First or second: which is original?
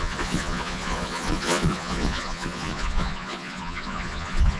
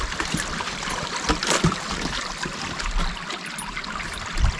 second